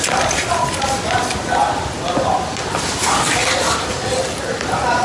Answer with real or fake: real